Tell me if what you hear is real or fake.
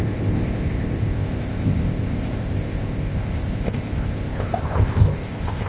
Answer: fake